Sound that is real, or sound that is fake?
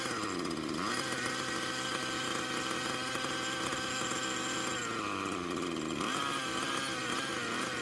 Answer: real